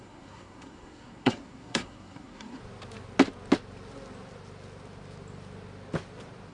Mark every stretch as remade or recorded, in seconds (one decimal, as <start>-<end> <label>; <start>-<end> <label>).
0.0-2.6 remade; 2.6-6.5 recorded